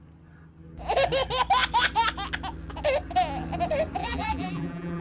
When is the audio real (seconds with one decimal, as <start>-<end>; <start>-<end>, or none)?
0.0-4.0